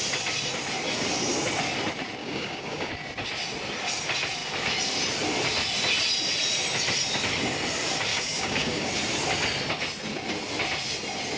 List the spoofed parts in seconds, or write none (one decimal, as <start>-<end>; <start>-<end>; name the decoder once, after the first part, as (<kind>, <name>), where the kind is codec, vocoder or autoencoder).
2.2-2.9 (codec, DAC); 8.1-8.9